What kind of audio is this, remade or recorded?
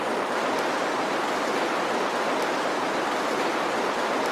recorded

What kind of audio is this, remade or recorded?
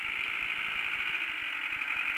recorded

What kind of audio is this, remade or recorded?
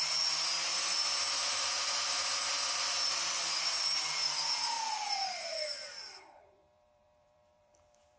remade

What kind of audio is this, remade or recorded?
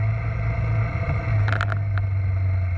recorded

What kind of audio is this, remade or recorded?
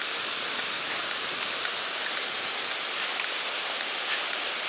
remade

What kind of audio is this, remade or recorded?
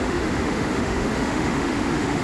remade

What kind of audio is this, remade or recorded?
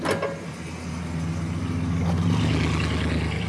recorded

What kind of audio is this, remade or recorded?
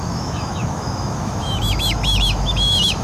remade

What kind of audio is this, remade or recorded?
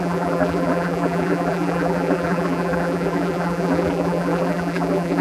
remade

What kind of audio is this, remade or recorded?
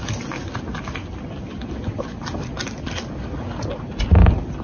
recorded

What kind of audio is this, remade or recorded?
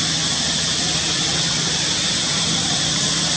recorded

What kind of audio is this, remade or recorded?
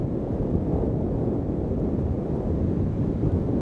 recorded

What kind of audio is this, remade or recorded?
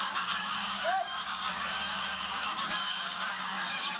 remade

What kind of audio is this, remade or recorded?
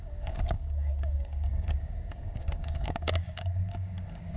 remade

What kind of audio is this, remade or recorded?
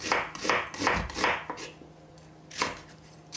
recorded